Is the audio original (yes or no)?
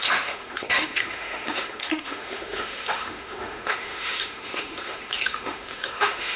no